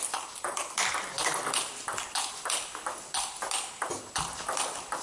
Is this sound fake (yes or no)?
no